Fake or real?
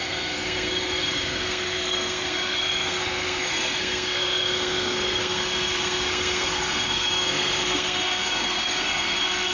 fake